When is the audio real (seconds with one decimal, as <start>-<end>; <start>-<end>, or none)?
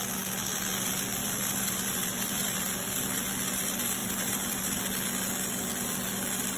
0.0-1.2; 2.7-4.0; 4.8-6.6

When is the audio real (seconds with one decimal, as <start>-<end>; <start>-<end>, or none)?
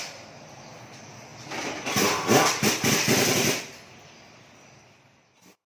0.0-1.3; 3.6-5.7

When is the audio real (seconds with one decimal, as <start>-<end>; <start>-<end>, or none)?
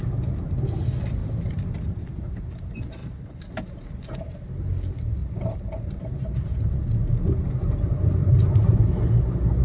0.0-1.2; 2.0-3.0; 3.9-5.2; 6.6-8.2; 8.8-9.6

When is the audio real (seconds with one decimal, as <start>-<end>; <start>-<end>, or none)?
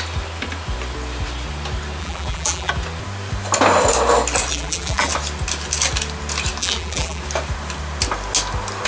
0.0-2.0; 2.7-4.5; 5.1-6.6; 7.2-8.9